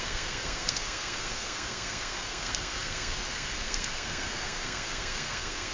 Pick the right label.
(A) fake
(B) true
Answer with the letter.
A